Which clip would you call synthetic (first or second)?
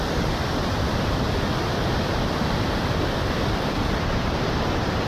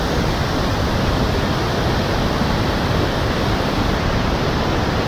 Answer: first